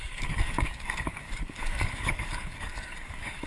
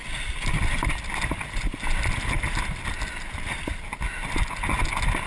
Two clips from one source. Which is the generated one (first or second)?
first